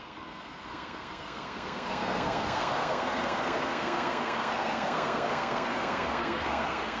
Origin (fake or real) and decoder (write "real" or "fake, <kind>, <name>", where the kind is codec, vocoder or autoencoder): fake, codec, SNAC